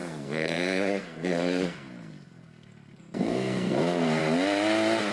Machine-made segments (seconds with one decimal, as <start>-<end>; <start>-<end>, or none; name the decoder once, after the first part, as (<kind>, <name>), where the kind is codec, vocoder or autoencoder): 0.0-4.2 (codec, SNAC)